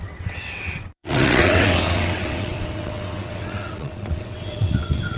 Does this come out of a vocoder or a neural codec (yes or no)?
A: yes